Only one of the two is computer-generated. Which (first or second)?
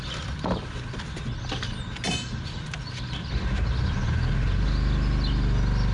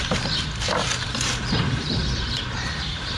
second